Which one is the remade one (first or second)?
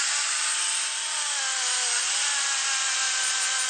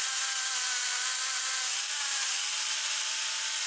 second